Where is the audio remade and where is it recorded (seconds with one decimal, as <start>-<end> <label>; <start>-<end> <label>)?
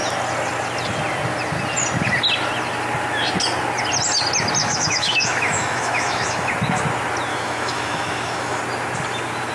0.0-4.6 recorded; 4.6-6.5 remade; 6.5-7.3 recorded; 7.3-8.6 remade; 8.6-9.5 recorded